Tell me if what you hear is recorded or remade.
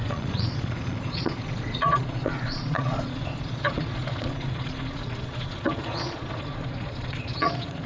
remade